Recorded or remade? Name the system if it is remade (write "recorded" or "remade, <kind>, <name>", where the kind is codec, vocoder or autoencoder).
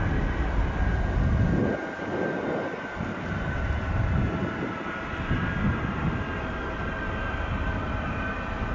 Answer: recorded